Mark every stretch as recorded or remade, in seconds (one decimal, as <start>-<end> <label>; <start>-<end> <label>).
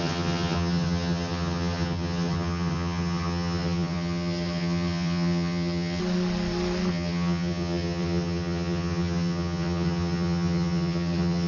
0.0-6.0 remade; 6.0-6.9 recorded; 6.9-11.5 remade